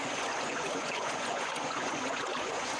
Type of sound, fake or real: fake